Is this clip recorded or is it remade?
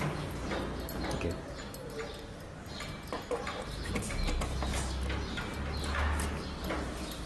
recorded